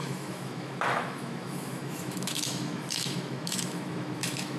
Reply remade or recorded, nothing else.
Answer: remade